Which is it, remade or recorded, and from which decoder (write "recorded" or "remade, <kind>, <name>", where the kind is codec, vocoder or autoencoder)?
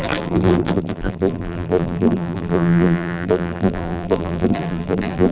remade, vocoder, BigVGAN v2